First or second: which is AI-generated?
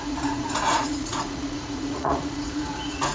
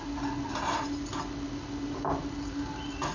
first